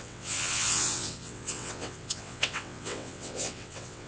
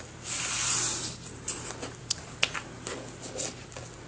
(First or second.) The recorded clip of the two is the second